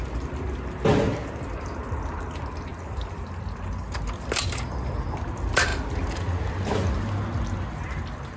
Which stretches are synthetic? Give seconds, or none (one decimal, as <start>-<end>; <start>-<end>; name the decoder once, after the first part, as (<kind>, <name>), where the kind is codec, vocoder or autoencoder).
none